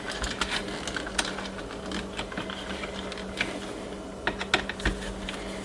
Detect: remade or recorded recorded